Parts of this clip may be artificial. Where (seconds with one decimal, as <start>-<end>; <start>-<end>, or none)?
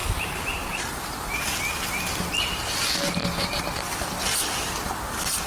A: 0.0-2.3; 3.2-4.9